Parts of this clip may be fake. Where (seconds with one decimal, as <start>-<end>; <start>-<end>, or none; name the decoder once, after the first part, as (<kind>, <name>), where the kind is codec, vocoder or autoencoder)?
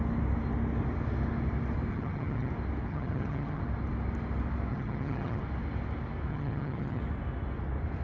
1.9-2.5 (vocoder, HiFi-GAN); 2.9-3.6; 4.7-5.4; 6.3-7.0